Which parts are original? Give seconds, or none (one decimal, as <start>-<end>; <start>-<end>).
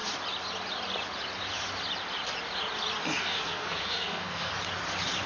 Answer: 0.0-3.2; 4.5-5.3